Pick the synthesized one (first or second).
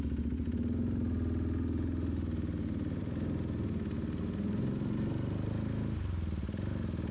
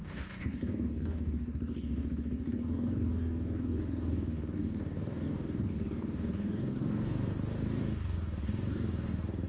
second